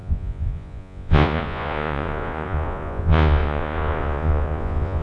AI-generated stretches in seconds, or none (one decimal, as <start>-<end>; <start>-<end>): 0.0-5.0